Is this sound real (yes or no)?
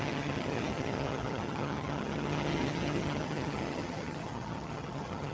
no